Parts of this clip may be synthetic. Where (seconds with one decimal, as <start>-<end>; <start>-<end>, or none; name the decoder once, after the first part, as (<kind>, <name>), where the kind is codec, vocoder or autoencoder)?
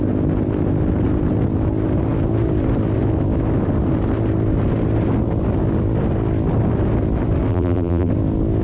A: 7.5-8.1 (vocoder, BigVGAN v2)